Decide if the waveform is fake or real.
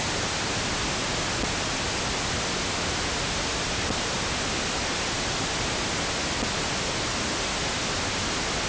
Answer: real